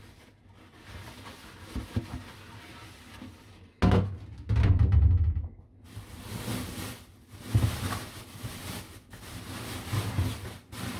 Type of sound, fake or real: real